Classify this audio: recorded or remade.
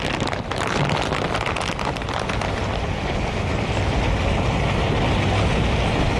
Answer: recorded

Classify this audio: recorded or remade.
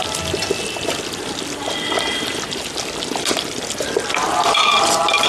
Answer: recorded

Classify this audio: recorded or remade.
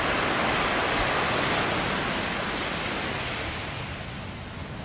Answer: recorded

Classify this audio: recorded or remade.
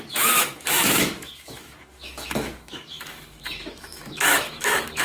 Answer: remade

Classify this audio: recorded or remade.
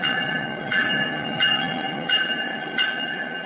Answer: remade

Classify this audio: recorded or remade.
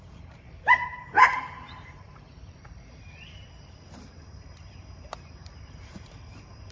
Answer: remade